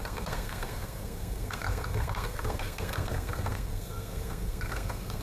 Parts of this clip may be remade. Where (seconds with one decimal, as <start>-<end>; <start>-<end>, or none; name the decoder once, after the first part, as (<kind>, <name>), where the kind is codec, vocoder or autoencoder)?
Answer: 0.0-5.2 (codec, SNAC)

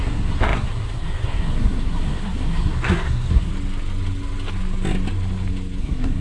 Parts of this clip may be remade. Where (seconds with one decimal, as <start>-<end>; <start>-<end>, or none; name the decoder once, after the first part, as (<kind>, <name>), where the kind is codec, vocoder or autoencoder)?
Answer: 0.0-3.5 (codec, SNAC); 5.8-6.2

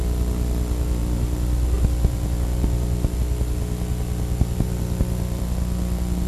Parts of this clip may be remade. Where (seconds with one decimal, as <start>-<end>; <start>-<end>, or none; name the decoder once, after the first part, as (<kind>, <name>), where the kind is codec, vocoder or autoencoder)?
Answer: none

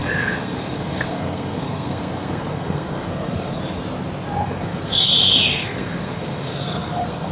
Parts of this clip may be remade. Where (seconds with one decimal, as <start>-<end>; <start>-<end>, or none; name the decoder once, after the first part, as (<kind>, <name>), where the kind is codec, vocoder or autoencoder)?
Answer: 0.0-3.6 (codec, SNAC); 4.4-5.1; 5.6-7.3

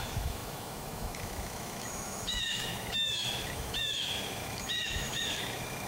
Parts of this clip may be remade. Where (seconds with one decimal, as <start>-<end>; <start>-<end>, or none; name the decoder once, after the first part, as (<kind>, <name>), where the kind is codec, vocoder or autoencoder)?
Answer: 0.0-5.9 (autoencoder, DAC-VAE)

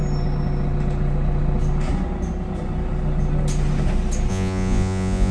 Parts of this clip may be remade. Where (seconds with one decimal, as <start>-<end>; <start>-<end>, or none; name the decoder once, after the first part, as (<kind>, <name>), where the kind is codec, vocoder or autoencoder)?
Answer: 4.3-5.3 (vocoder, Vocos)

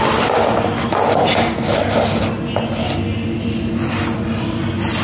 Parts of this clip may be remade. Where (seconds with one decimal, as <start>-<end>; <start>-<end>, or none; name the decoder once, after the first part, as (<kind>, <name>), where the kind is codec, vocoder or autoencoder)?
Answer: none